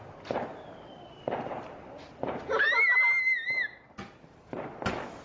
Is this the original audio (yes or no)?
yes